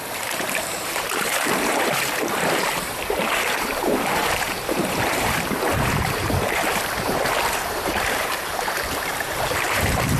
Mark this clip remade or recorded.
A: remade